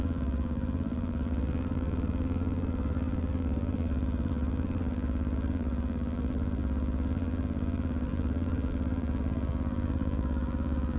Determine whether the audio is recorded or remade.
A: remade